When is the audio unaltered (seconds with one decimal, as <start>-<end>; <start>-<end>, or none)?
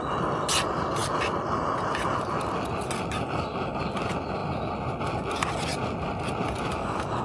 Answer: 0.0-7.2